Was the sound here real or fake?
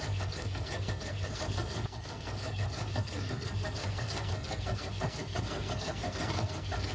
fake